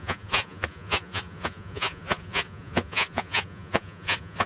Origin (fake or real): fake